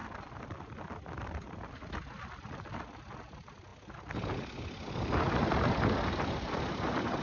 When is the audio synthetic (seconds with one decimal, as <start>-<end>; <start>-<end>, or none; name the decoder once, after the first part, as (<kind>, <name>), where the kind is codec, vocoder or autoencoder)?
none